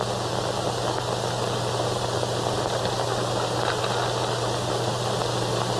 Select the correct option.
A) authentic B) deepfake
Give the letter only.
A